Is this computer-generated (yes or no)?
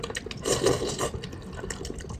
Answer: no